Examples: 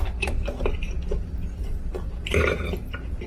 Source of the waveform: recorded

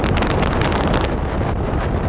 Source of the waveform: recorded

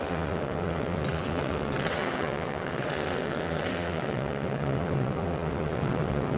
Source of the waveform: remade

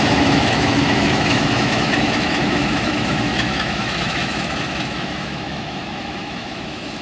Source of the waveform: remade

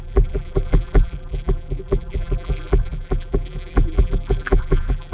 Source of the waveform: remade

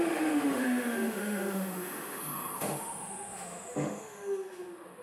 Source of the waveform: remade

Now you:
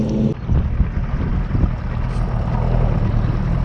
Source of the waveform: recorded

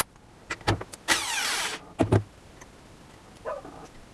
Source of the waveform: recorded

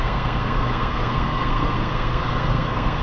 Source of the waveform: remade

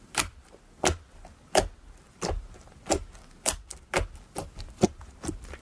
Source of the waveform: recorded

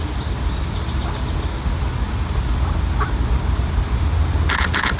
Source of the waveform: recorded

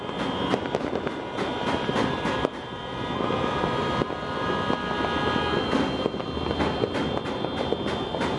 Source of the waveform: recorded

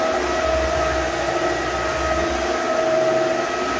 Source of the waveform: recorded